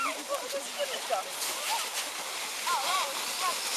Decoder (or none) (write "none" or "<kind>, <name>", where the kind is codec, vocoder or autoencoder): none